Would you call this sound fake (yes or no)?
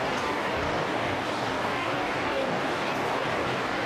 yes